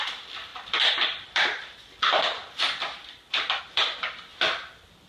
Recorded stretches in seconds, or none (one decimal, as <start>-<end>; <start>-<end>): 4.3-5.1